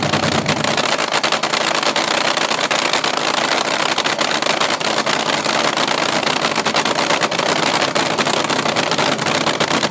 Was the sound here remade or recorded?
recorded